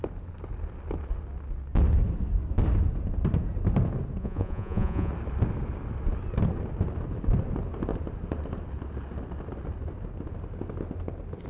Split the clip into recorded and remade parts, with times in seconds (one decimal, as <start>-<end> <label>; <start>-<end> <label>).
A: 0.0-4.2 recorded; 4.2-5.1 remade; 5.1-11.5 recorded